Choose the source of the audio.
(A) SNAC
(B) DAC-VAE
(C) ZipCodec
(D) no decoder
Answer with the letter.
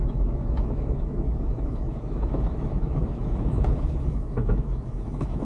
B